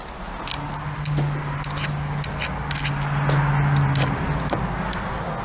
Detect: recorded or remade recorded